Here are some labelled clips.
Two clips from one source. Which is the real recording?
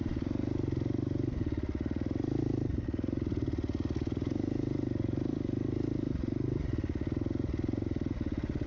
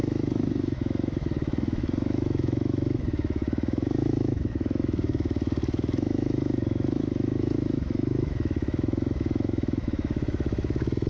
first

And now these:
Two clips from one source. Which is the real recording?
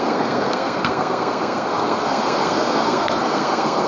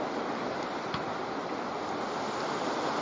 second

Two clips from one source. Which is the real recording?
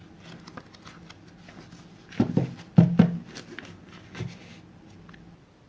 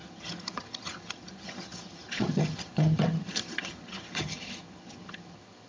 first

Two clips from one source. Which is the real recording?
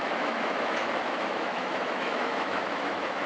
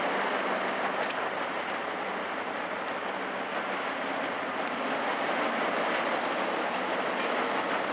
second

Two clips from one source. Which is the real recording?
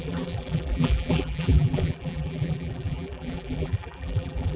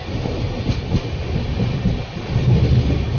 second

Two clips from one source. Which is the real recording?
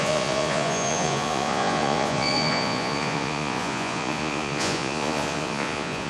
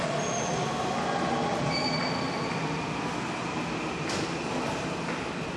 second